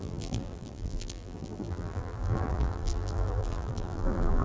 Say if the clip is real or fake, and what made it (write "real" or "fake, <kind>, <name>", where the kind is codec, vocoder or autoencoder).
fake, vocoder, BigVGAN v2